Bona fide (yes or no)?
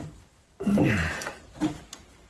no